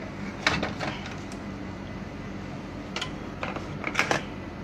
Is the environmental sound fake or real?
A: real